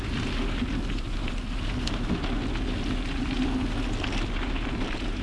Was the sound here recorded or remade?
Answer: recorded